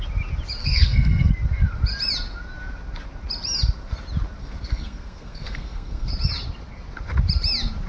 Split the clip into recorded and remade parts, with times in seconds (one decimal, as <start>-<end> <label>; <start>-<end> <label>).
0.0-0.6 recorded; 0.6-1.3 remade; 1.3-4.4 recorded; 4.4-6.1 remade; 6.1-7.9 recorded

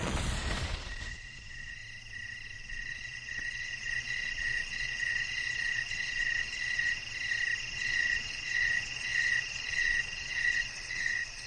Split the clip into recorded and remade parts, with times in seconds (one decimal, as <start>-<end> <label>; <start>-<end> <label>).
0.0-1.8 remade; 1.8-2.6 recorded; 2.6-7.0 remade; 7.0-7.6 recorded; 7.6-11.5 remade

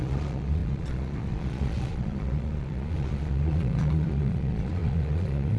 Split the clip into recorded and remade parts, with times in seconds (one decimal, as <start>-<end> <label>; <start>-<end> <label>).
0.0-5.6 remade